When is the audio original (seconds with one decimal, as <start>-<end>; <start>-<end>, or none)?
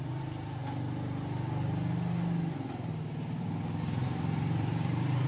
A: 0.6-3.8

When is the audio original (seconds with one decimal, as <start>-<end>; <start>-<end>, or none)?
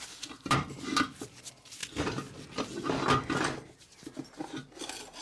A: 0.0-5.2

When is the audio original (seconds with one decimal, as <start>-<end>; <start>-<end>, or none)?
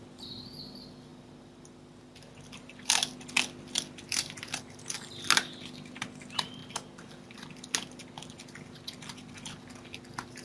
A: 0.0-6.6; 7.3-10.4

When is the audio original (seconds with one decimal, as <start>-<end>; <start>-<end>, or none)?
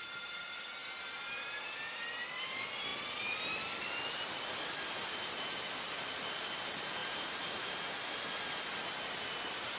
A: 0.0-7.0; 7.7-9.8